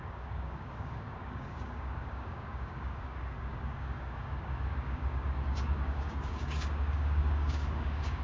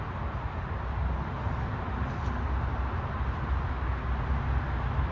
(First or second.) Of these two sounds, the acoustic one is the second